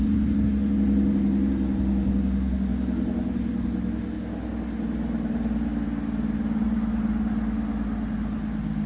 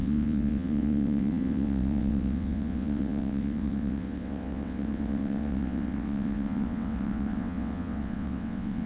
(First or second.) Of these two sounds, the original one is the first